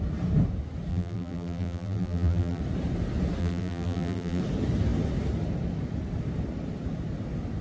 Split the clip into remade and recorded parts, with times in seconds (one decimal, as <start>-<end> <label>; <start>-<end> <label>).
0.0-0.9 recorded; 0.9-2.6 remade; 2.6-3.4 recorded; 3.4-4.4 remade; 4.4-7.6 recorded